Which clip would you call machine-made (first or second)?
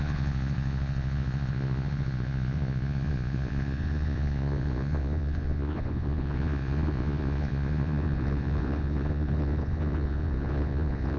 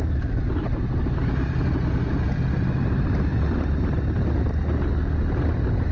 first